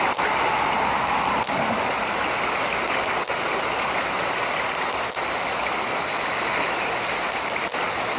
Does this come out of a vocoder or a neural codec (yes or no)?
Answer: no